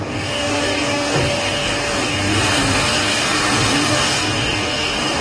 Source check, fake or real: fake